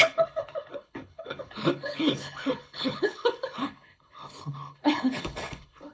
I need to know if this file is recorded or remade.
remade